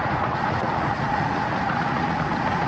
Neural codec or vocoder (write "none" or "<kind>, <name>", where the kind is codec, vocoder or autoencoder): vocoder, Vocos